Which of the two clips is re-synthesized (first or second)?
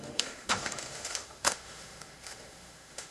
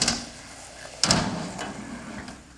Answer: first